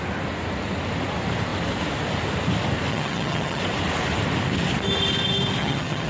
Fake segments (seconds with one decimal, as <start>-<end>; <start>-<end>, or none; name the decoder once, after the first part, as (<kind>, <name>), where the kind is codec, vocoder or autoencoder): 2.9-3.6 (vocoder, HiFi-GAN); 5.6-6.1